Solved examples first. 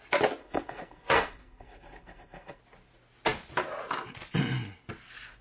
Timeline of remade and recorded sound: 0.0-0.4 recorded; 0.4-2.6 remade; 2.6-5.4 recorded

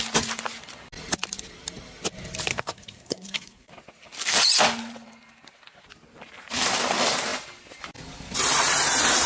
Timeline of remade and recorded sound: 0.0-2.5 recorded; 2.5-3.7 remade; 3.7-9.3 recorded

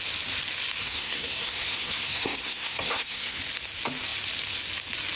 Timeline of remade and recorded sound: 0.0-0.8 recorded; 0.8-3.4 remade; 3.4-5.2 recorded

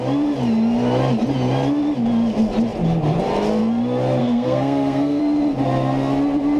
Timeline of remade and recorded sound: 0.0-4.2 recorded; 4.2-5.2 remade; 5.2-6.6 recorded

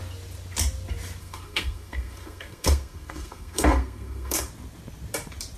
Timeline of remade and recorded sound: 0.0-1.2 recorded; 1.2-4.5 remade; 4.5-5.6 recorded

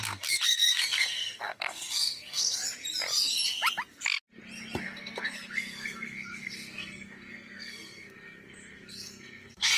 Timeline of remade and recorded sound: 0.0-2.6 remade; 2.6-4.8 recorded; 4.8-9.8 remade

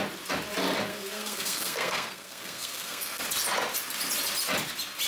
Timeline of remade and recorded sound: 0.0-0.9 recorded; 0.9-3.2 remade; 3.2-5.1 recorded